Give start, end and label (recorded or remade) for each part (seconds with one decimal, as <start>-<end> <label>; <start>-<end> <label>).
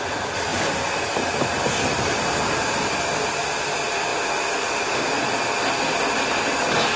0.0-7.0 recorded